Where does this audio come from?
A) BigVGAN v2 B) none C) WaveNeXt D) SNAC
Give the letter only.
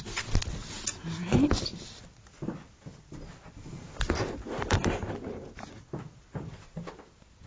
B